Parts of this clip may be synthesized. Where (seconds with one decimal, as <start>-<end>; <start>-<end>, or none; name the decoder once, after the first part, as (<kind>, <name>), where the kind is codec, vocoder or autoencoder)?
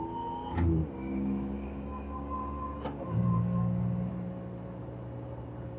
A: 0.8-4.1 (codec, DAC)